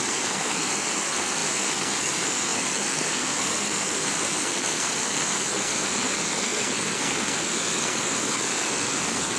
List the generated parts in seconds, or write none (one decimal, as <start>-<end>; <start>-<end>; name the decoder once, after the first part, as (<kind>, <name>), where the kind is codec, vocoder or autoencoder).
0.0-9.4 (codec, SNAC)